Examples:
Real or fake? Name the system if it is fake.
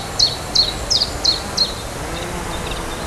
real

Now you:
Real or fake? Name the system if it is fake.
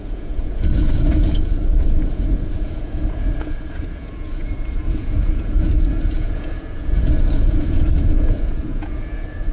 fake, vocoder, Vocos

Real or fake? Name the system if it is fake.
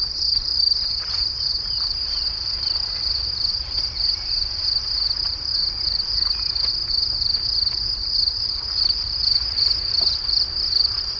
real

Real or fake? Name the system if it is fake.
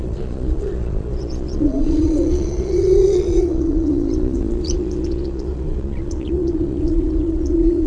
fake, vocoder, Vocos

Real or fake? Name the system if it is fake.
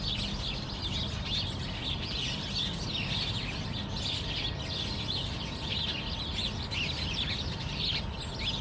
real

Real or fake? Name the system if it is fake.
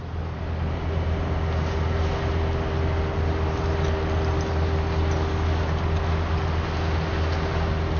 real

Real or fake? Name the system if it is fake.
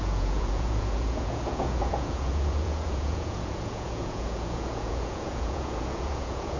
fake, vocoder, Vocos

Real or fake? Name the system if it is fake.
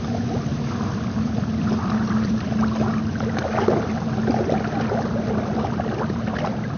real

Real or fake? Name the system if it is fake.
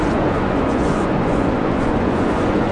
fake, vocoder, Vocos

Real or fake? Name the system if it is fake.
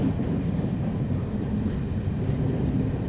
real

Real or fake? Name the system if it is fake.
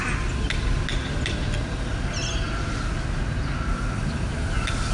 real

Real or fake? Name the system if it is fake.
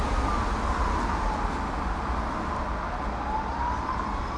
real